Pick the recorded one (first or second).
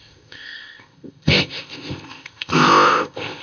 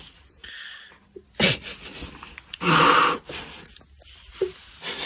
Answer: second